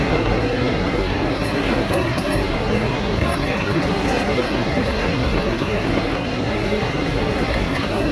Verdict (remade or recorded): remade